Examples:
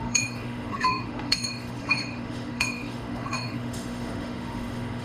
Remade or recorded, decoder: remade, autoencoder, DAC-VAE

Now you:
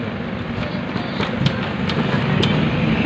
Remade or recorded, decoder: recorded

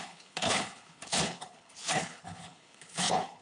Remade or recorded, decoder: remade, codec, HILCodec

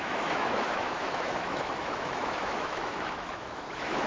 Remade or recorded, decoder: remade, autoencoder, DAC-VAE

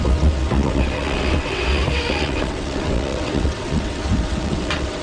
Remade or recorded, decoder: remade, vocoder, WaveNeXt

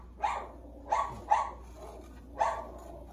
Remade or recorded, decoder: recorded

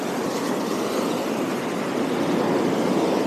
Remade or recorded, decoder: recorded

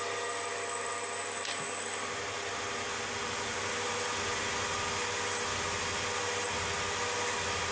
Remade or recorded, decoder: recorded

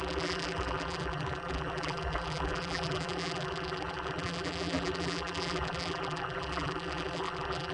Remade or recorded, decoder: remade, vocoder, BigVGAN v2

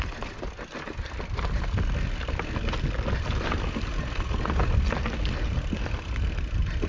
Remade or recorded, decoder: recorded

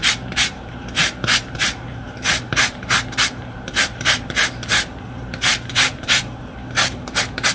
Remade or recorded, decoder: remade, vocoder, BigVGAN v2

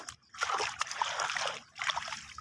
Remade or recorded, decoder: remade, vocoder, BigVGAN v2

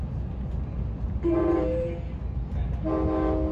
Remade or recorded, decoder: recorded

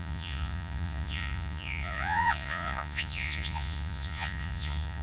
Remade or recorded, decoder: remade, vocoder, Vocos